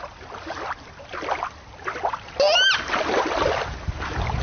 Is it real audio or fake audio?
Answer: real